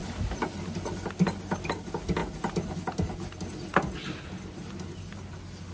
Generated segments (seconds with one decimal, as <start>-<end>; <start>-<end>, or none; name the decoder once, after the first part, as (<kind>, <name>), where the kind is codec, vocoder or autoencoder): none